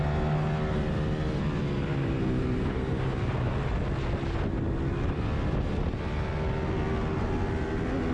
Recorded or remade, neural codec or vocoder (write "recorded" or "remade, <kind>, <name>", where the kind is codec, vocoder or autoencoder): recorded